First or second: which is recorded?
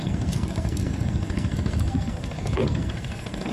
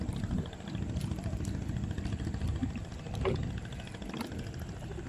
second